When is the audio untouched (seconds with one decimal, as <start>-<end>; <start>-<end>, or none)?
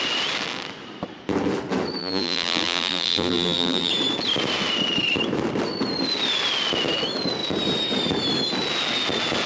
0.0-2.0; 3.9-9.5